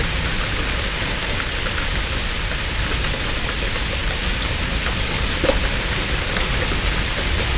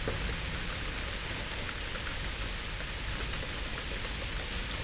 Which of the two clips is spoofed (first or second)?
first